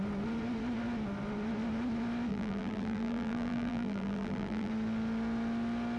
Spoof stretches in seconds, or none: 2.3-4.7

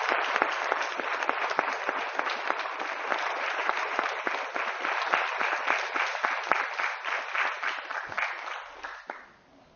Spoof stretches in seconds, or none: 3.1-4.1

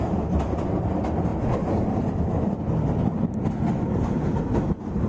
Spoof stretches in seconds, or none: none

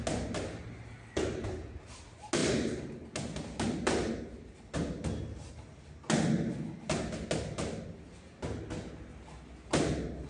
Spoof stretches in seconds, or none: none

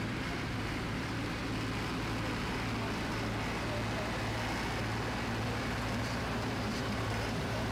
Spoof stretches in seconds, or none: 0.0-1.4; 6.0-7.7

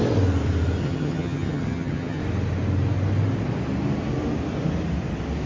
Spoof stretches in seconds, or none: 0.8-2.2